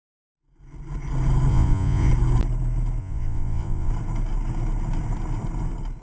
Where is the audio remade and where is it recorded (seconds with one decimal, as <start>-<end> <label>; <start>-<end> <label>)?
0.0-1.5 recorded; 1.5-2.1 remade; 2.1-3.0 recorded; 3.0-3.9 remade; 3.9-6.0 recorded